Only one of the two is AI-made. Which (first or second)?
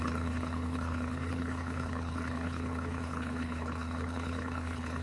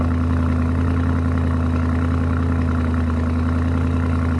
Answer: first